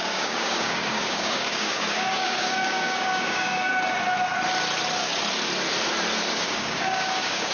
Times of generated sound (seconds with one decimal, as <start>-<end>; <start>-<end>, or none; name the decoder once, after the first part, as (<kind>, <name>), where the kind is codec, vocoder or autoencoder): 0.0-3.7 (codec, DAC); 6.3-7.5